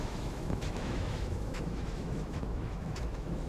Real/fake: fake